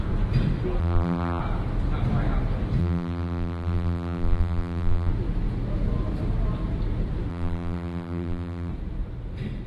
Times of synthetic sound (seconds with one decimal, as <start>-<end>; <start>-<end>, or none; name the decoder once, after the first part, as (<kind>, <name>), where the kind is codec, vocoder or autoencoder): 0.8-1.4 (vocoder, BigVGAN v2); 2.8-5.1; 7.3-8.7